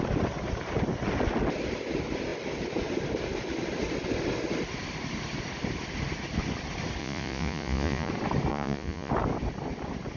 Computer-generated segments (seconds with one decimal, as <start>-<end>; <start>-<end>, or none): 7.0-8.1; 8.5-9.1